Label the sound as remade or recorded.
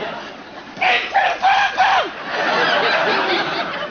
recorded